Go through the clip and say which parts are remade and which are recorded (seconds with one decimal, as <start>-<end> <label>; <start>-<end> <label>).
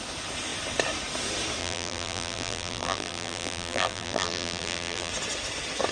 0.0-1.6 recorded; 1.6-5.1 remade; 5.1-5.9 recorded